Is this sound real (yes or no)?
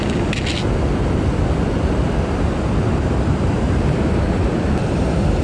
yes